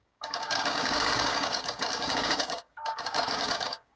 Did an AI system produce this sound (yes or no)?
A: yes